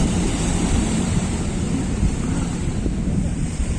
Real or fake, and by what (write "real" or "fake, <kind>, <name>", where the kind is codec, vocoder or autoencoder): fake, vocoder, BigVGAN v2